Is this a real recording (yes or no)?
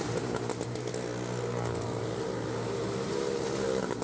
yes